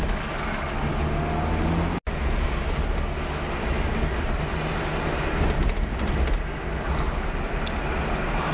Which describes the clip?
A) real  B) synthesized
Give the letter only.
A